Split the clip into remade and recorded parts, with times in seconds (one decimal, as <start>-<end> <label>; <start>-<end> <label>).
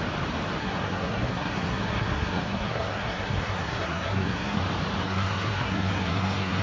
0.0-0.6 recorded; 0.6-4.6 remade; 4.6-5.0 recorded; 5.0-6.6 remade